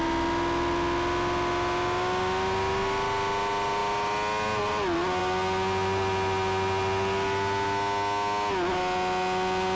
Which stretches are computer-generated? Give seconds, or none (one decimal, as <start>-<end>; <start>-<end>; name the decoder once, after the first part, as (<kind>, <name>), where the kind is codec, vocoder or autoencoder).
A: none